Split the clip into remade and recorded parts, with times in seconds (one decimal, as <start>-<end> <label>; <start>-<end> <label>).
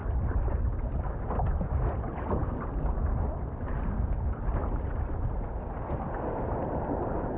0.0-7.4 recorded